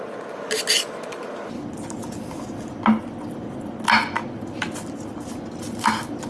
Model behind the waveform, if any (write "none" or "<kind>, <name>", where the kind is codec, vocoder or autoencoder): none